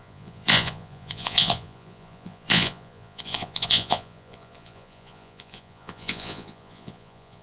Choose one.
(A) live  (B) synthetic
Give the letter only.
B